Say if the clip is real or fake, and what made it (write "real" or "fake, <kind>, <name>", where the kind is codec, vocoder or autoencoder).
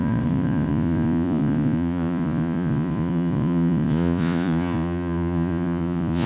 fake, vocoder, Vocos